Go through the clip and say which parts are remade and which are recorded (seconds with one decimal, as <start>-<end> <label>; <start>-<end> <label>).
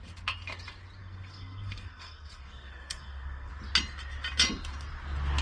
0.0-1.0 recorded; 1.0-3.5 remade; 3.5-5.4 recorded